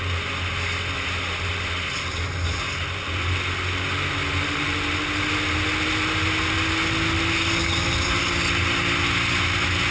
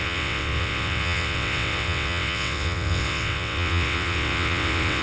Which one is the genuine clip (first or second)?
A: first